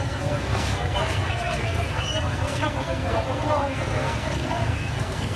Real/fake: fake